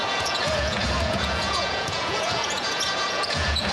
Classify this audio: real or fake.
fake